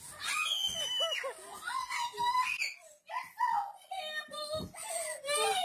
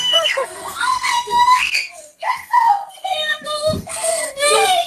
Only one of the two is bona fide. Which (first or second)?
first